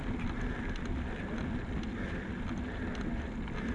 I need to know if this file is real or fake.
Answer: real